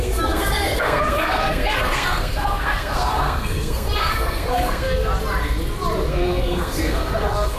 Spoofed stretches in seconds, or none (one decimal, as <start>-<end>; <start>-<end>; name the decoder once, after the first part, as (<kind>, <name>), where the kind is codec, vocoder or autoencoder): 0.0-5.1 (codec, SNAC); 6.1-7.6